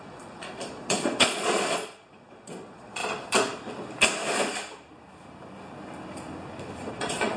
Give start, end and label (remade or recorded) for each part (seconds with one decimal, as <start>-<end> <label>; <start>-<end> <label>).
0.0-3.0 remade; 3.0-6.9 recorded; 6.9-7.4 remade